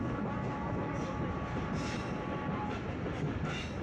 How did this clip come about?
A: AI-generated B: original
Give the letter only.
B